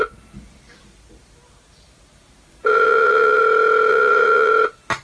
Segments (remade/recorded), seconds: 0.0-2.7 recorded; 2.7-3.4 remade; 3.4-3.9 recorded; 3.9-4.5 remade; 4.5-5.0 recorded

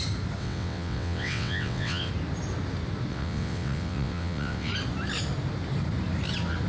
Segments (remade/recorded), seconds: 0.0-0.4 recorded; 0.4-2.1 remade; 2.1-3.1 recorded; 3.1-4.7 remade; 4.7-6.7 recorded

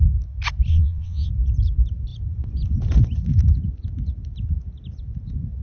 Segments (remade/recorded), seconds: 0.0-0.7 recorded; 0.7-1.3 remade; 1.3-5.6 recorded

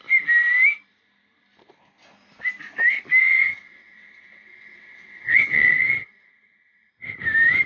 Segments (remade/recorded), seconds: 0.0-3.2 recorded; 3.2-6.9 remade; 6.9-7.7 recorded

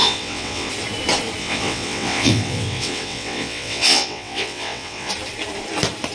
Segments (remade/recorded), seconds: 0.0-0.7 remade; 0.7-1.4 recorded; 1.4-5.1 remade; 5.1-6.1 recorded